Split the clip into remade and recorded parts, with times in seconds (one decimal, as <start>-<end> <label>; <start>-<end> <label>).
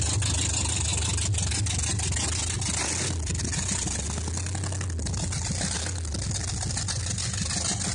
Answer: 0.0-7.9 recorded